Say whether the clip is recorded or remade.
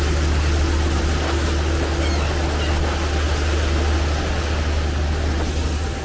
recorded